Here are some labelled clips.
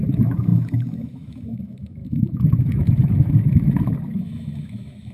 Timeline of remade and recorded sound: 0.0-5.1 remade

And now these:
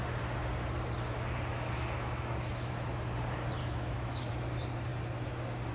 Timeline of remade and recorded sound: 0.0-1.5 recorded; 1.5-2.7 remade; 2.7-3.6 recorded; 3.6-4.3 remade; 4.3-5.7 recorded

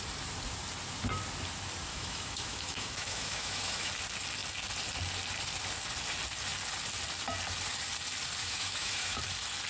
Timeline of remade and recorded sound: 0.0-1.9 recorded; 1.9-3.9 remade; 3.9-8.4 recorded; 8.4-9.2 remade; 9.2-9.7 recorded